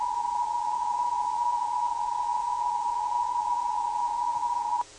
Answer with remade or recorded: remade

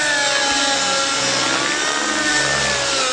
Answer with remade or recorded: recorded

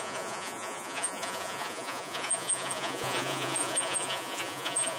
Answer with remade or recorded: remade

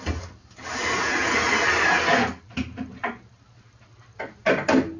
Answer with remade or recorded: recorded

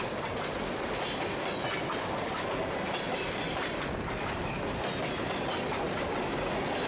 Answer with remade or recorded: recorded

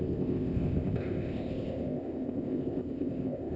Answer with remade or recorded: remade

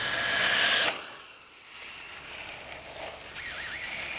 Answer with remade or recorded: recorded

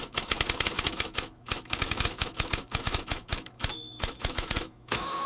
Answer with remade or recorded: remade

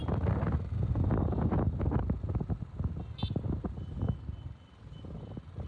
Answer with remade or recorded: recorded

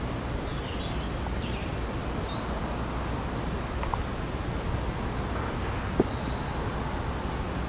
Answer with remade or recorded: recorded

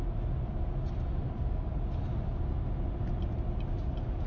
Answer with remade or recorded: recorded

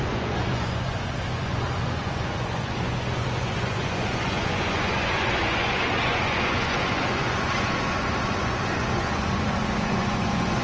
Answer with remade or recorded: remade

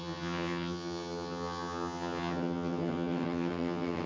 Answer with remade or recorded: remade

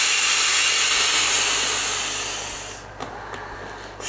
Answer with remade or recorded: recorded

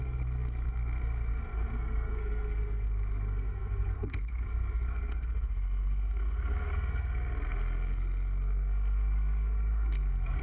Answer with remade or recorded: remade